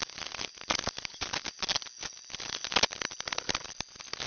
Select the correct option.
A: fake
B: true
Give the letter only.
B